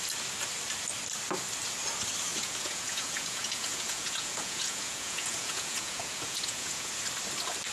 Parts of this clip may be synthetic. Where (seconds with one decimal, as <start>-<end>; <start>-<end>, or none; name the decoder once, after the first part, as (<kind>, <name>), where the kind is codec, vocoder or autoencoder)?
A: 2.3-6.9 (vocoder, Vocos)